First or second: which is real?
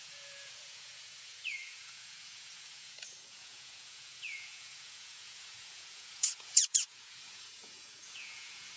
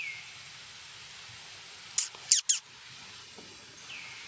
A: second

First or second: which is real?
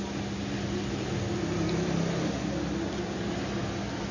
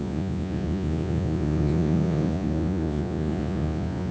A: first